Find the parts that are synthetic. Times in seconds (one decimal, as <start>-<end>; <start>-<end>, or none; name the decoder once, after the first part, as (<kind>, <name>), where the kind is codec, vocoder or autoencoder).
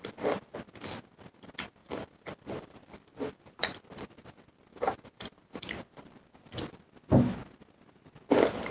1.8-6.8 (vocoder, BigVGAN v2)